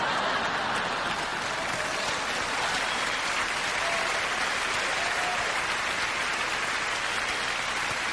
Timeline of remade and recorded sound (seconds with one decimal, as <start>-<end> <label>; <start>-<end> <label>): 0.0-8.1 recorded